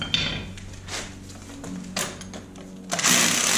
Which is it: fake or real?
real